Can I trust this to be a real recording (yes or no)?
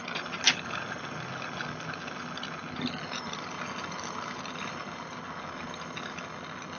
yes